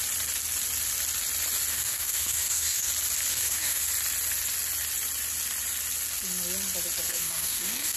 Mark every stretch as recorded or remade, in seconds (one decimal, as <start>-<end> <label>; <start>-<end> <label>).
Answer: 0.0-1.7 recorded; 1.7-2.9 remade; 2.9-3.3 recorded; 3.3-3.8 remade; 3.8-7.1 recorded; 7.1-8.0 remade